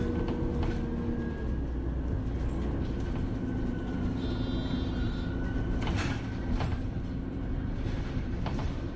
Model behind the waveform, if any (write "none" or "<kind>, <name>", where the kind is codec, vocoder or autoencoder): none